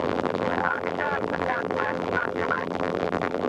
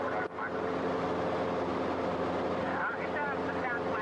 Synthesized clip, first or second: first